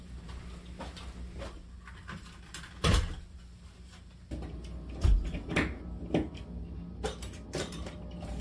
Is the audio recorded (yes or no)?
yes